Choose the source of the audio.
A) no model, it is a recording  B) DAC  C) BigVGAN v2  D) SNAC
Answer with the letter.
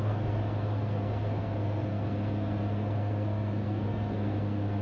D